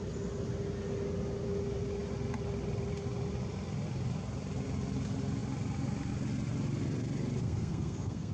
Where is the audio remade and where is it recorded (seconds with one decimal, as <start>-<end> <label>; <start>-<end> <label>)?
0.0-7.4 recorded; 7.4-8.3 remade